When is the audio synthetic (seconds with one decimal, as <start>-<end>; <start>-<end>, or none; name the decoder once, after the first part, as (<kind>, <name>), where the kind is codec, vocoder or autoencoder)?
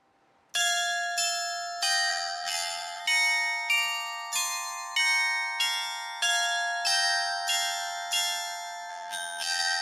2.1-3.0 (vocoder, BigVGAN v2); 8.9-9.8